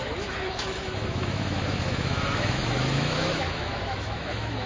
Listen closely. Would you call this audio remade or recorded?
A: remade